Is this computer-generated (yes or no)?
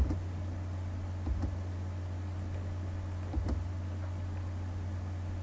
no